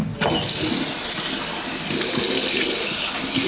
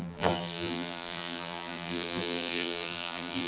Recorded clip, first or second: first